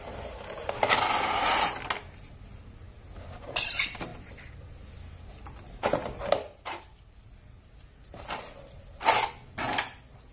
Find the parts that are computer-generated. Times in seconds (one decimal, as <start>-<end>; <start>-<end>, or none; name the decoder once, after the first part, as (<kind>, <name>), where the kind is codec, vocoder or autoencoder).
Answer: none